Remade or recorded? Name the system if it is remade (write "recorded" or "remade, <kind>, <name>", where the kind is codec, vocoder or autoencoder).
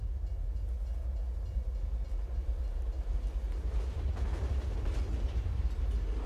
recorded